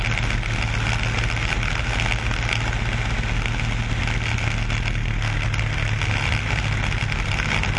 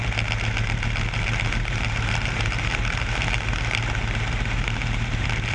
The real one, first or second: first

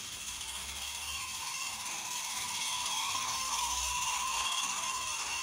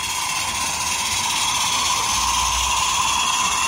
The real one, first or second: second